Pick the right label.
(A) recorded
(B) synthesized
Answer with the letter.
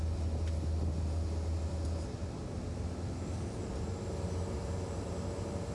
A